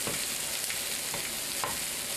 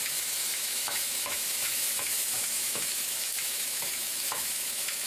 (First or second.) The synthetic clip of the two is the second